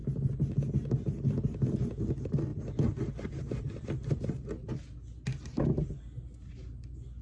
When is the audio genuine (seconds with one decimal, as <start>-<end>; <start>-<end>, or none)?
0.0-2.5; 3.4-5.3; 6.0-7.2